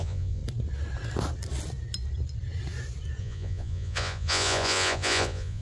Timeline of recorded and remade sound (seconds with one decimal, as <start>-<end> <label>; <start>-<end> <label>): 0.0-0.4 remade; 0.4-3.2 recorded; 3.2-5.6 remade